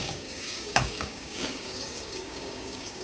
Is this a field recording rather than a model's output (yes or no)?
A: no